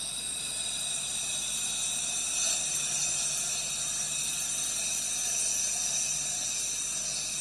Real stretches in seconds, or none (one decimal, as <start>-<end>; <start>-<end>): 0.0-7.4